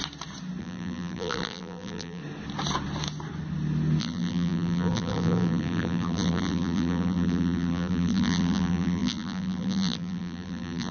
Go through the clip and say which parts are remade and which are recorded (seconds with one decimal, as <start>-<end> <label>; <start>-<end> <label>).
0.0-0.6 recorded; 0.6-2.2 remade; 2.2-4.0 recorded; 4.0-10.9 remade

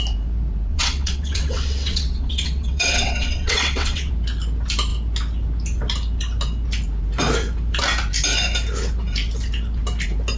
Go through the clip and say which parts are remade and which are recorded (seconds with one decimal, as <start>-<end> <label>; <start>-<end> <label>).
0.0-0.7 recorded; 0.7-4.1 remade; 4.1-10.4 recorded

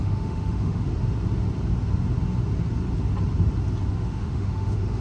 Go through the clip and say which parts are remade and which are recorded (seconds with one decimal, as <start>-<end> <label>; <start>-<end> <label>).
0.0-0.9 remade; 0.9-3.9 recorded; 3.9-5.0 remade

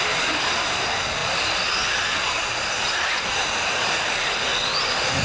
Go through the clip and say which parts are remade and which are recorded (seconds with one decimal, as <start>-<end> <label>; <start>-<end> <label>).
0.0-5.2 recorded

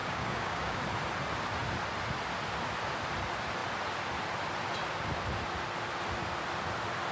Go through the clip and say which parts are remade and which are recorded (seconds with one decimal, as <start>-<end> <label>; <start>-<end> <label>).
0.0-0.8 remade; 0.8-7.1 recorded